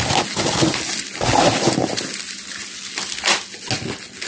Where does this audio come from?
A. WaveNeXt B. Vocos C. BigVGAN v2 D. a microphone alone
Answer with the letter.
D